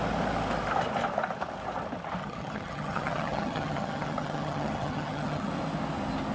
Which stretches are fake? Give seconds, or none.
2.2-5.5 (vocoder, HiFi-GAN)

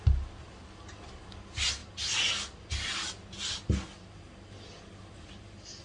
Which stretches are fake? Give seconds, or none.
none

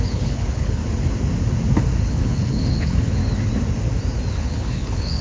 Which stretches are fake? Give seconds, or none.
0.0-0.8 (codec, HILCodec); 2.0-3.2; 4.3-5.2

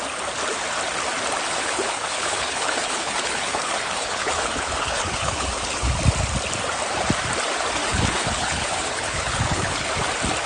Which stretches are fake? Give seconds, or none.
1.5-5.9 (codec, HILCodec); 7.9-9.9

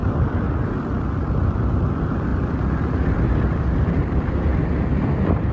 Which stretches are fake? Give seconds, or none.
0.0-0.5 (vocoder, BigVGAN v2); 2.3-4.3

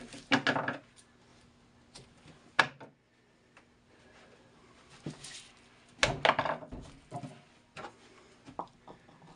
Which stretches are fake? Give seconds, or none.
none

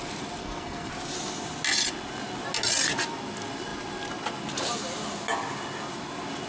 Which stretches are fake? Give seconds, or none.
0.4-0.9 (codec, SNAC)

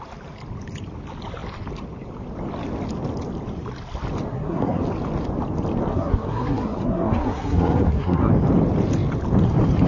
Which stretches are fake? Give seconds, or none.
4.3-4.8 (codec, SNAC); 5.9-8.3